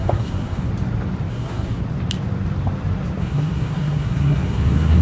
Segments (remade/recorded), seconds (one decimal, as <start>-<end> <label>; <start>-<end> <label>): 0.0-0.7 remade; 0.7-1.3 recorded; 1.3-1.8 remade; 1.8-3.2 recorded; 3.2-5.0 remade